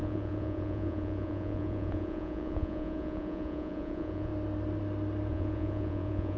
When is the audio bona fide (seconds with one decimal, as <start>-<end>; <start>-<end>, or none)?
4.3-5.3